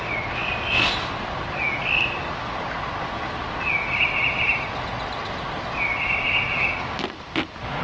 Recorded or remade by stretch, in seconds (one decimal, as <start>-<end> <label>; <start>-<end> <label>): 0.0-7.8 recorded